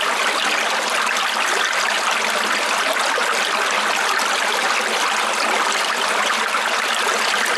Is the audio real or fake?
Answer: real